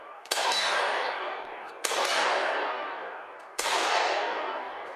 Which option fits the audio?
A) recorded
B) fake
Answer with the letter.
B